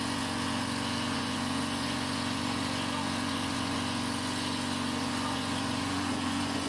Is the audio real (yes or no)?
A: no